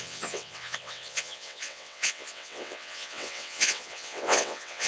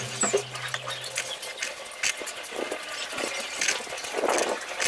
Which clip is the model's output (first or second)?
first